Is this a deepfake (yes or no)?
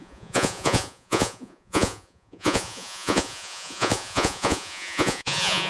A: yes